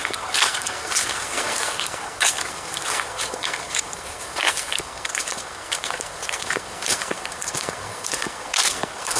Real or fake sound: fake